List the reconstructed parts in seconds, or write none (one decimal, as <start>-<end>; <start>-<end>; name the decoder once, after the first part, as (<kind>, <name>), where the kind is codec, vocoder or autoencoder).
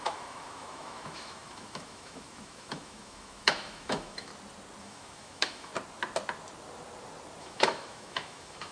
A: 0.0-4.3 (autoencoder, DAC-VAE); 4.8-5.7; 7.4-8.7